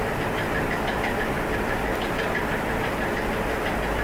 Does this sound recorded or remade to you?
recorded